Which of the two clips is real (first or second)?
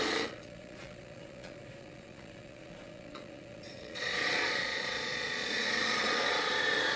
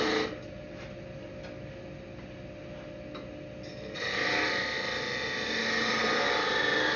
second